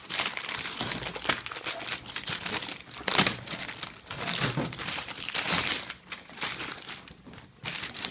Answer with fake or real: real